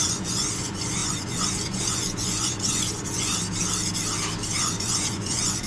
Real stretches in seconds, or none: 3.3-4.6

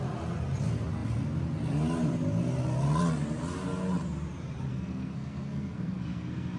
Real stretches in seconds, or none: 0.0-4.7

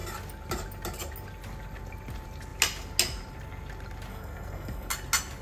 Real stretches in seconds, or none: 0.0-4.1; 4.9-5.4

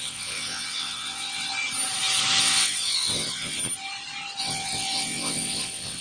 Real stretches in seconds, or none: 1.5-2.4; 3.6-4.4

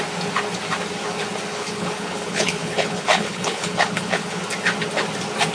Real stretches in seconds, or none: 0.0-1.5; 4.4-5.5

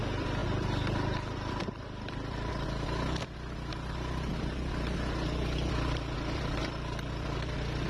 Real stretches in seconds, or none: 0.0-7.9